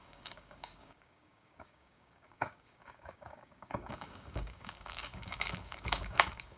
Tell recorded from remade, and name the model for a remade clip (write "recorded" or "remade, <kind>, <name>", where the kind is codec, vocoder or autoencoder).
remade, codec, DAC